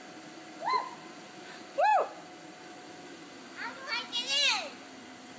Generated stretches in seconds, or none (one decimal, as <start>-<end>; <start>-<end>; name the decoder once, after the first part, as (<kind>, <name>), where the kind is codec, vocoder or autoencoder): none